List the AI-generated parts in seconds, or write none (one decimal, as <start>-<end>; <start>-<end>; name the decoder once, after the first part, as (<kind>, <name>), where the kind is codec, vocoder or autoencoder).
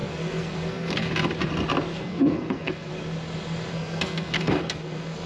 0.0-1.1 (codec, SNAC); 1.9-2.9; 3.7-5.3